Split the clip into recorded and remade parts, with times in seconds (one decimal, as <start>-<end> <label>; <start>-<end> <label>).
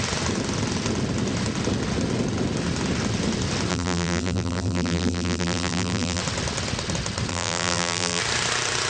0.0-3.7 recorded; 3.7-6.2 remade; 6.2-7.3 recorded; 7.3-8.2 remade; 8.2-8.9 recorded